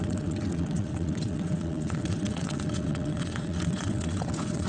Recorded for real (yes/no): no